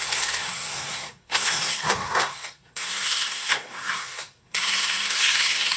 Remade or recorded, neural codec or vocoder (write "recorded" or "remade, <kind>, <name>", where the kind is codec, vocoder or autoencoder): remade, codec, SNAC